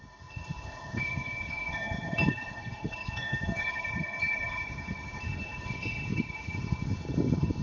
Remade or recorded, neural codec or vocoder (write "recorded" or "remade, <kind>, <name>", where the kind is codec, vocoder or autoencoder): remade, codec, HILCodec